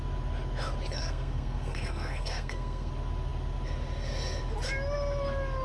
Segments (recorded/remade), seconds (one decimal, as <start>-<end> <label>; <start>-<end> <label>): 0.0-1.0 recorded; 1.0-2.9 remade; 2.9-5.6 recorded